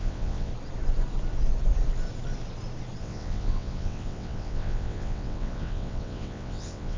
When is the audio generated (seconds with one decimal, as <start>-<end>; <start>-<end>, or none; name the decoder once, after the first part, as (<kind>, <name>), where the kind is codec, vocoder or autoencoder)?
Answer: 0.0-0.5 (vocoder, WaveNeXt); 3.0-7.0